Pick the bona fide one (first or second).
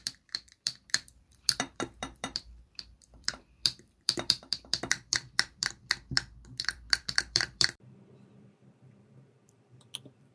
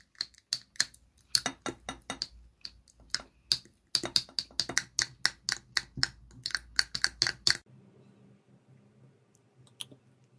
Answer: second